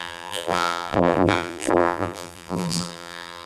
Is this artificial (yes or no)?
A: yes